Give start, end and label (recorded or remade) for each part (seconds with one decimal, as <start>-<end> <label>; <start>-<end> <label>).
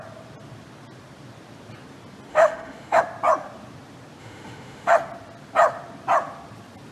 0.0-2.3 recorded; 2.3-3.0 remade; 3.0-4.2 recorded; 4.2-4.9 remade; 4.9-6.9 recorded